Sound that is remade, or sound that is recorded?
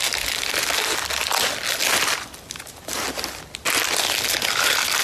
recorded